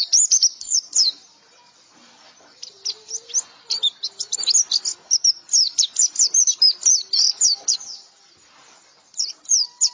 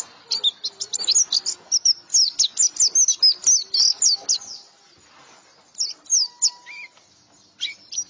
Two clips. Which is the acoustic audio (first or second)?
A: second